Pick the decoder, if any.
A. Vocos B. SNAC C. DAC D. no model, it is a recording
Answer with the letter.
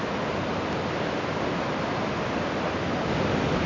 D